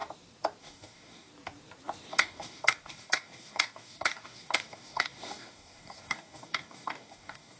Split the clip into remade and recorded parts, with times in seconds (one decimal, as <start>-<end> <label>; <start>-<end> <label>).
0.0-0.6 recorded; 0.6-1.3 remade; 1.3-2.1 recorded; 2.1-7.6 remade